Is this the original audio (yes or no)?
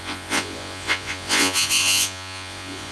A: no